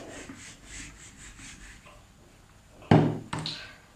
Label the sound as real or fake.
real